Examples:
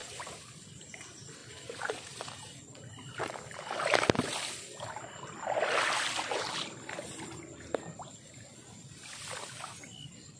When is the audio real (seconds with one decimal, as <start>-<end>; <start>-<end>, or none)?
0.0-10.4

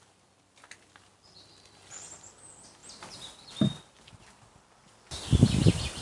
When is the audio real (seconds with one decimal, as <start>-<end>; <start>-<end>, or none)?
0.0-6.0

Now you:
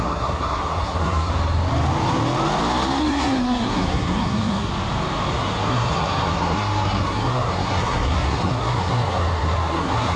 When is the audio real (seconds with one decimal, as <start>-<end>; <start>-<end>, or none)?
1.3-3.0; 4.7-5.3